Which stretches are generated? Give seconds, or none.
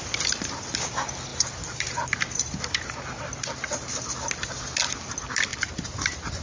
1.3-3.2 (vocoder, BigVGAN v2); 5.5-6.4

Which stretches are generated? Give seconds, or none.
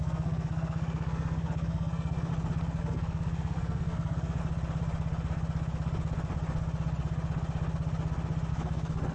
0.0-2.3 (codec, SNAC); 2.8-4.4; 8.5-9.1